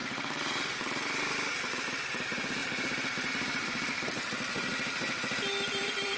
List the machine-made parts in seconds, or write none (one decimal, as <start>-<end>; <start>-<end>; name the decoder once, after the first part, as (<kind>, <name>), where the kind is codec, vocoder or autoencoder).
0.0-2.6 (vocoder, BigVGAN v2); 3.3-4.7; 5.8-6.2